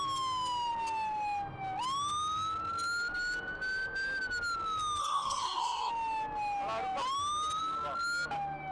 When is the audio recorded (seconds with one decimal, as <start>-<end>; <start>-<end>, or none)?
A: 0.0-5.0; 5.9-8.7